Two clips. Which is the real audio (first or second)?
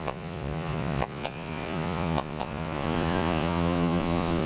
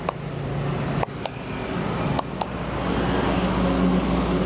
second